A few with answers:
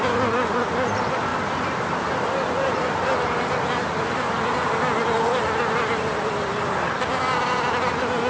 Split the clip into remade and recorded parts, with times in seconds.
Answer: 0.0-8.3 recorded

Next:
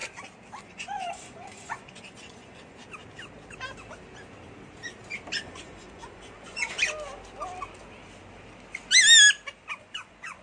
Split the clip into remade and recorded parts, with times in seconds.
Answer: 0.0-0.6 recorded; 0.6-2.8 remade; 2.8-5.4 recorded; 5.4-6.8 remade; 6.8-9.8 recorded; 9.8-10.4 remade

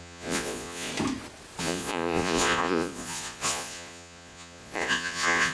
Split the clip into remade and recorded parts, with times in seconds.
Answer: 0.0-0.9 remade; 0.9-1.6 recorded; 1.6-5.5 remade

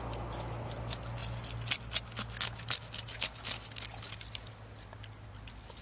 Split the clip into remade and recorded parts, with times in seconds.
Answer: 0.0-5.8 recorded

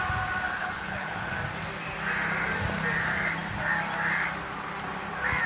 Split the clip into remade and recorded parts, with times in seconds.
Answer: 0.0-0.6 recorded; 0.6-1.3 remade; 1.3-5.5 recorded

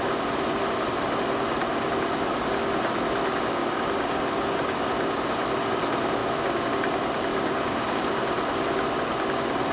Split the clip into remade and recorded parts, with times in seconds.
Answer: 0.0-3.6 recorded; 3.6-4.2 remade; 4.2-7.3 recorded; 7.3-8.1 remade; 8.1-9.7 recorded

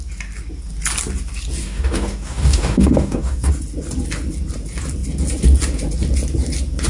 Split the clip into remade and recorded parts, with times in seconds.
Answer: 0.0-1.6 recorded; 1.6-3.5 remade; 3.5-6.9 recorded

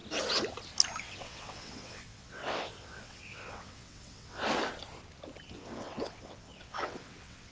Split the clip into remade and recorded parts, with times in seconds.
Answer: 0.0-1.0 recorded; 1.0-4.4 remade; 4.4-5.5 recorded; 5.5-7.5 remade